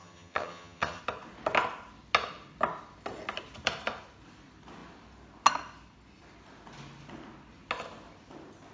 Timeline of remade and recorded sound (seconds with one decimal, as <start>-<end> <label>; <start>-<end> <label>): 0.0-1.0 remade; 1.0-8.7 recorded